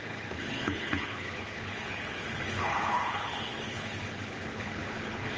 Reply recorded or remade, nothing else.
remade